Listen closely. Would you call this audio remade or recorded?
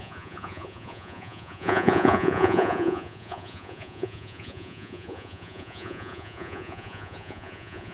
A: remade